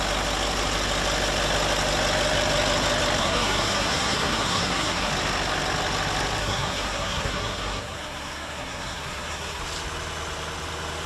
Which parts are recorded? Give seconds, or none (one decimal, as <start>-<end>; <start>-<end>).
0.0-3.2; 5.1-6.4; 9.6-11.1